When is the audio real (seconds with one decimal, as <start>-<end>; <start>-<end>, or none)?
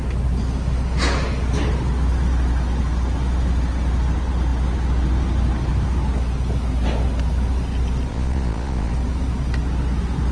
0.0-8.1; 8.9-10.3